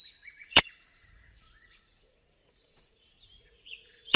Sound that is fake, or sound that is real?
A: fake